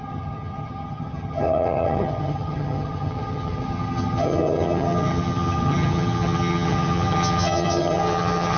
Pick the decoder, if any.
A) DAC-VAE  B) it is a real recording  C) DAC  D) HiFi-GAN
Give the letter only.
D